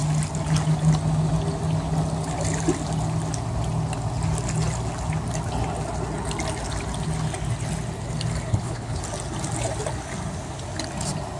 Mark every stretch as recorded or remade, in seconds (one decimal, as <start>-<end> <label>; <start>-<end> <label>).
0.0-8.5 recorded; 8.5-9.0 remade; 9.0-11.4 recorded